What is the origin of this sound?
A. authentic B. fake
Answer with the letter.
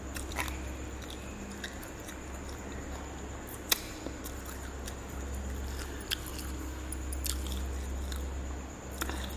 A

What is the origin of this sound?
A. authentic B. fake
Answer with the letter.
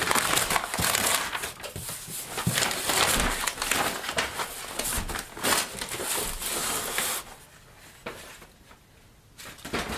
A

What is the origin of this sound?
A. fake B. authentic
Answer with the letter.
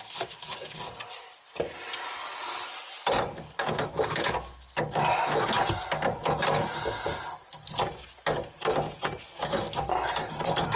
B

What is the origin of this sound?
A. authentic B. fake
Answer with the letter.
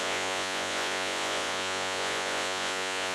B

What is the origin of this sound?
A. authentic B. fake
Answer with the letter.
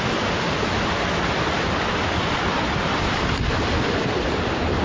A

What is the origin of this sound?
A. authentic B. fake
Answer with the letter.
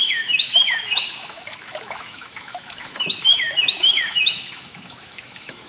B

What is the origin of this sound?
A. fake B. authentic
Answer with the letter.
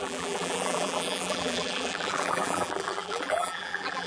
A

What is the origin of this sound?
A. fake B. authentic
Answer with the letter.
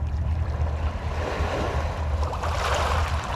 B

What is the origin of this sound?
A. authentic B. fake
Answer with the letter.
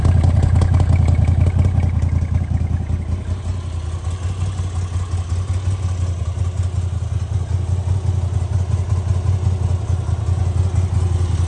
A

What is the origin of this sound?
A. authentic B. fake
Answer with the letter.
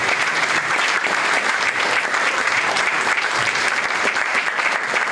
B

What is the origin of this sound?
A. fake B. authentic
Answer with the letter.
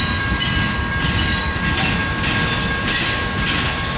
B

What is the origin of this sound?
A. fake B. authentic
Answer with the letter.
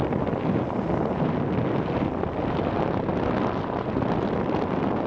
B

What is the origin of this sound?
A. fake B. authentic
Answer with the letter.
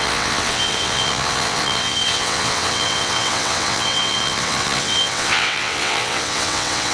A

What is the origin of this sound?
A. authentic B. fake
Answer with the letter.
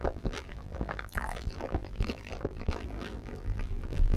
B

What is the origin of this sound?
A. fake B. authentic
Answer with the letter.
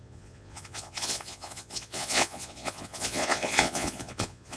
A